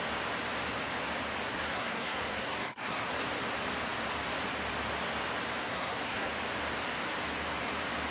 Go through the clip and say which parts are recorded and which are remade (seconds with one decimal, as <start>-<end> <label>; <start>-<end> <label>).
0.0-1.5 recorded; 1.5-3.1 remade; 3.1-5.6 recorded; 5.6-6.3 remade; 6.3-8.1 recorded